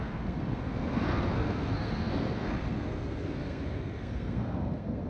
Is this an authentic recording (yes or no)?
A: no